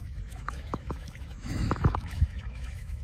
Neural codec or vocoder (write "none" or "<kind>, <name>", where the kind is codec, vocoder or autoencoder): autoencoder, DAC-VAE